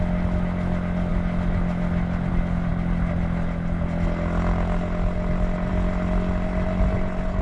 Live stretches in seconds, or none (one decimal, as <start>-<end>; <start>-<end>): 0.0-7.4